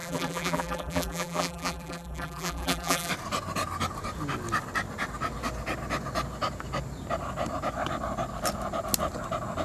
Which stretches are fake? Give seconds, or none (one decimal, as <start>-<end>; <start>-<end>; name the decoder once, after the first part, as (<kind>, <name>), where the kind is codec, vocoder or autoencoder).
0.0-3.1 (vocoder, BigVGAN v2)